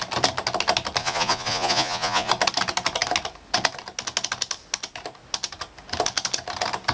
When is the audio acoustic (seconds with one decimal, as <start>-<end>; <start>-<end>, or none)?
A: 0.0-1.0; 2.3-6.9